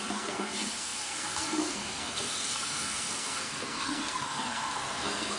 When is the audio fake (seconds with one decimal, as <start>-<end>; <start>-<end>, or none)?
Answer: 0.0-5.4

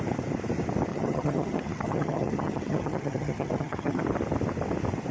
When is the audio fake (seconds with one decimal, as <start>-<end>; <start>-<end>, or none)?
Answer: 0.9-4.0

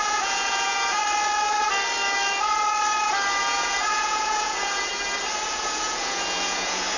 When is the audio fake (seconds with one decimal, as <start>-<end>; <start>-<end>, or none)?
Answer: 0.0-1.0; 3.4-4.9; 5.5-7.0